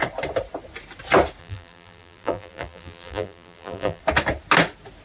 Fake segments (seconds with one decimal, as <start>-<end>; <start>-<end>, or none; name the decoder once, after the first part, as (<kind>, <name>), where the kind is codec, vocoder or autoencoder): 1.4-4.0 (vocoder, BigVGAN v2)